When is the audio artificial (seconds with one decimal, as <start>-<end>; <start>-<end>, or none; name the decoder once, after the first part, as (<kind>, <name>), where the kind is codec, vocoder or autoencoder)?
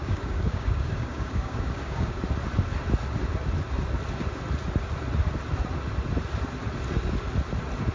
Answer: 0.0-2.2 (codec, DAC)